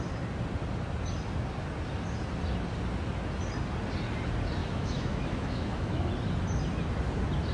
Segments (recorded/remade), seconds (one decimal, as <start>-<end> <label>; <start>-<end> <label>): 0.0-4.6 recorded; 4.6-6.0 remade; 6.0-7.5 recorded